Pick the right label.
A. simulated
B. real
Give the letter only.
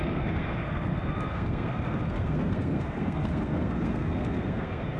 A